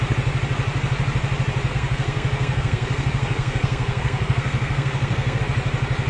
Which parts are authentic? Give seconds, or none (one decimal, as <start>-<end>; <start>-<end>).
0.0-1.7; 5.4-6.1